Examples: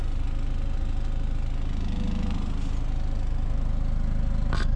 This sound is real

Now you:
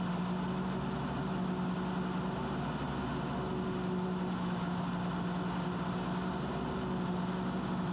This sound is real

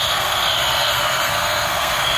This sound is fake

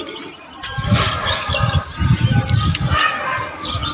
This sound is real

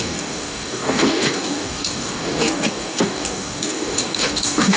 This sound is fake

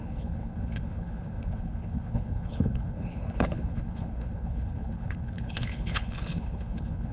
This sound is fake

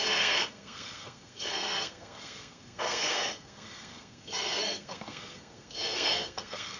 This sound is fake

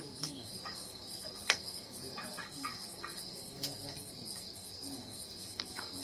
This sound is fake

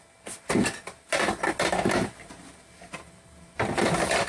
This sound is real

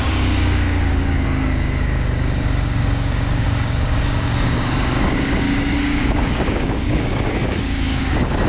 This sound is fake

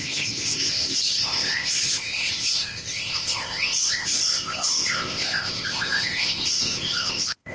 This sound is fake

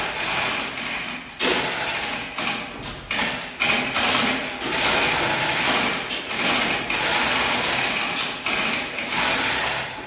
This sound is real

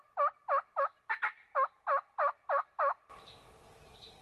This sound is real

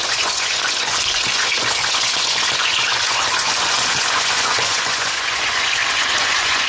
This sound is fake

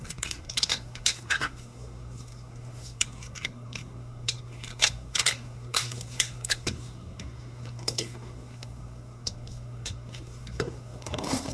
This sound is fake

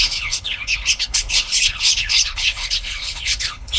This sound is fake